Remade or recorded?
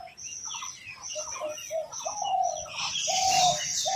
recorded